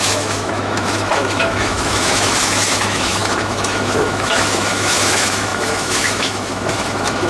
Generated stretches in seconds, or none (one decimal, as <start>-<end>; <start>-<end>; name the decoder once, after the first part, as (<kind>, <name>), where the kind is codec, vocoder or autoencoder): 0.0-7.3 (autoencoder, DAC-VAE)